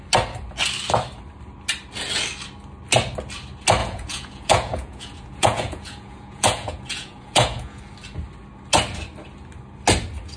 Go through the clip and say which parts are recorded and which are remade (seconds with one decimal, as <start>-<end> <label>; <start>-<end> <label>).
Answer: 0.0-3.8 recorded; 3.8-7.8 remade; 7.8-10.4 recorded